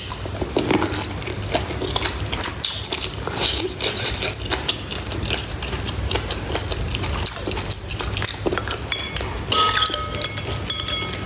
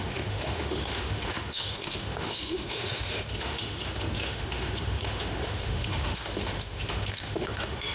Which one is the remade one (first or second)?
second